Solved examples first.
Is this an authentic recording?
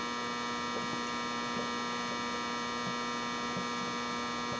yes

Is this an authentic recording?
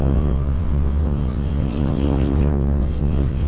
no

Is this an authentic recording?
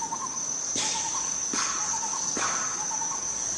no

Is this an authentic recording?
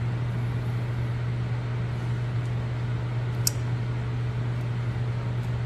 yes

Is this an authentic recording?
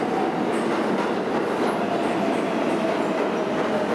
yes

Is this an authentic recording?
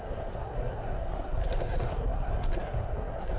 no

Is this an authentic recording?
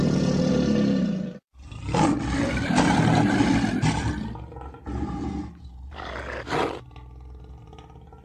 yes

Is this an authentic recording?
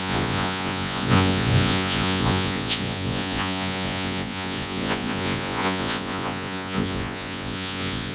no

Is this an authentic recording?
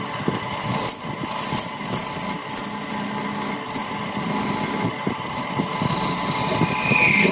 yes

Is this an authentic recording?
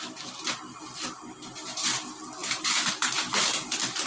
yes